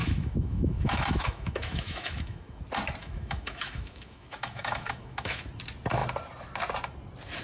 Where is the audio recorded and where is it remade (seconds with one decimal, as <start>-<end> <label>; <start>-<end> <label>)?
0.0-2.6 remade; 2.6-3.0 recorded; 3.0-5.5 remade; 5.5-7.4 recorded